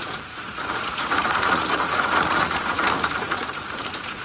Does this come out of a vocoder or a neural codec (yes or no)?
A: yes